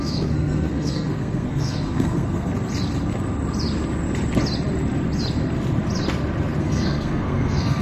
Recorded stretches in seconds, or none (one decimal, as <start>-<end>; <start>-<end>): 2.5-6.6